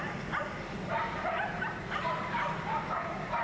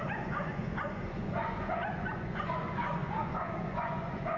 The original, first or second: first